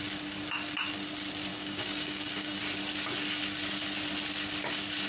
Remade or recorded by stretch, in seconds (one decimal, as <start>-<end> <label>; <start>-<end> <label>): 0.0-1.5 recorded; 1.5-2.6 remade; 2.6-5.1 recorded

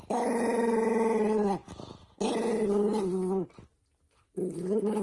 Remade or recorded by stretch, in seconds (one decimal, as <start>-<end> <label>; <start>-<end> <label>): 0.0-5.0 recorded

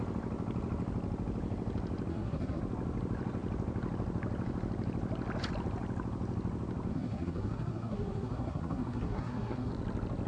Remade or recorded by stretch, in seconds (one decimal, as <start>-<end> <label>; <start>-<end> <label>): 0.0-2.1 recorded; 2.1-2.6 remade; 2.6-6.9 recorded; 6.9-9.7 remade; 9.7-10.3 recorded

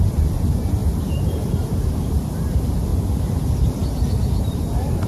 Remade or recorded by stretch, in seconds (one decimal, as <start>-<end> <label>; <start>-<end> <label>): 0.0-0.8 recorded; 0.8-2.4 remade; 2.4-2.9 recorded; 2.9-3.4 remade; 3.4-5.1 recorded

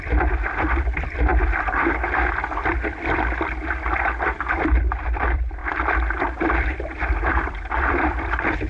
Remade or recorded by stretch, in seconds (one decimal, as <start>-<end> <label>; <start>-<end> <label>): 0.0-1.3 remade; 1.3-4.5 recorded; 4.5-5.6 remade; 5.6-6.2 recorded; 6.2-8.7 remade

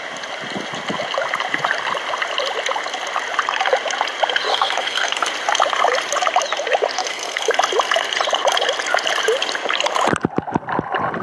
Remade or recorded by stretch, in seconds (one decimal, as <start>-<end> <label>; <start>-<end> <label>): 0.0-4.5 recorded; 4.5-5.3 remade; 5.3-7.0 recorded; 7.0-7.5 remade; 7.5-11.2 recorded

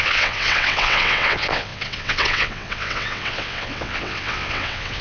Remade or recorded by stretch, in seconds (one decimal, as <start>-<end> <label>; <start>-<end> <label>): 0.0-5.0 remade

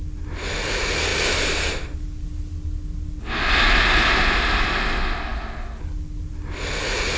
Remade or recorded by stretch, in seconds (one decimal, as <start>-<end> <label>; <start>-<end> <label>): 0.0-7.2 recorded